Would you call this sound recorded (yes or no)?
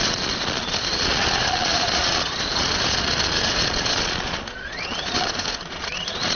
no